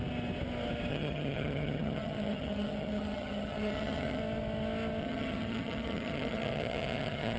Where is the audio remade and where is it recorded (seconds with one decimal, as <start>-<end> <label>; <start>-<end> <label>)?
0.0-0.9 recorded; 0.9-4.2 remade; 4.2-5.0 recorded; 5.0-7.4 remade